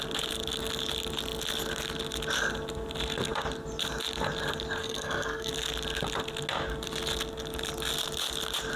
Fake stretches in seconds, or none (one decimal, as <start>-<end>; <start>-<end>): 4.8-5.5